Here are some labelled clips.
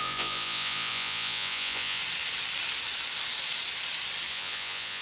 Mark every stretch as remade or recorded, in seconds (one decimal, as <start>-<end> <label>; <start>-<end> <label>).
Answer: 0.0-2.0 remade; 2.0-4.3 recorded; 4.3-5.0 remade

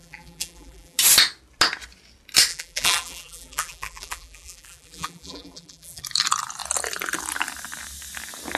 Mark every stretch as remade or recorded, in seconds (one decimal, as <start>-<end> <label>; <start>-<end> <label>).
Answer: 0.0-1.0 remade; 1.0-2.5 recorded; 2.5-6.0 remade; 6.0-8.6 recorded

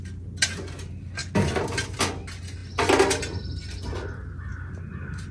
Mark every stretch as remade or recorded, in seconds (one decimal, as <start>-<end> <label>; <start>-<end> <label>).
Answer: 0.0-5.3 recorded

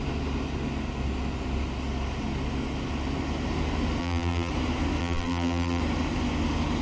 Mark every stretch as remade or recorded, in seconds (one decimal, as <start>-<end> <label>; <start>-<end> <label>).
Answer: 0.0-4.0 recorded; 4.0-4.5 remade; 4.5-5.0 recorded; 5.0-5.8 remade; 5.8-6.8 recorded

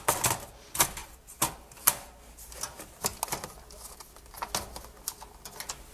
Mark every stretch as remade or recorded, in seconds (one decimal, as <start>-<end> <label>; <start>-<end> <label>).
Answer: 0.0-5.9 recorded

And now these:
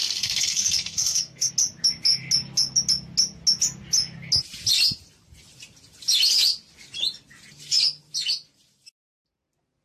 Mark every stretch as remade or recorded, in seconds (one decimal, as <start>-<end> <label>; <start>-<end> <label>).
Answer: 0.0-1.5 remade; 1.5-9.8 recorded

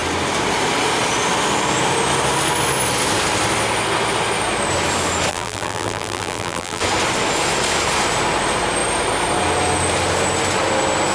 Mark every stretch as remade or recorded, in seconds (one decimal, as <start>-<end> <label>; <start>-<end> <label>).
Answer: 0.0-5.3 recorded; 5.3-6.8 remade; 6.8-11.1 recorded

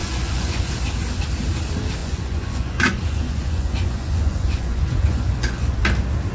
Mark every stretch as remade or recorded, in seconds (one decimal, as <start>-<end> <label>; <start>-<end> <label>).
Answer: 0.0-0.7 remade; 0.7-2.0 recorded; 2.0-5.8 remade; 5.8-6.3 recorded